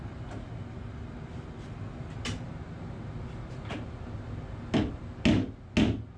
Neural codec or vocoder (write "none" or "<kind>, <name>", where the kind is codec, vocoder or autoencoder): none